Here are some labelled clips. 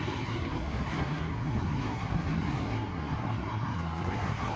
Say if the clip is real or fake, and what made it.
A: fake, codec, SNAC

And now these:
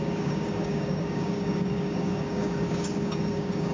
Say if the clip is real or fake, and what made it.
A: fake, codec, DAC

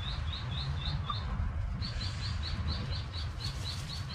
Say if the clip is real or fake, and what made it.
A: real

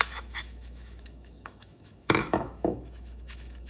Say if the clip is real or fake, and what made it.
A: fake, autoencoder, DAC-VAE